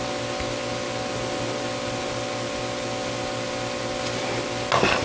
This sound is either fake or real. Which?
real